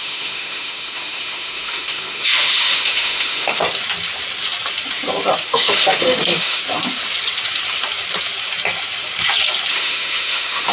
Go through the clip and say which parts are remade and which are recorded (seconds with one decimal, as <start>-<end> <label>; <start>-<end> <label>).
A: 0.0-3.6 remade; 3.6-5.5 recorded; 5.5-6.6 remade; 6.6-9.7 recorded; 9.7-10.7 remade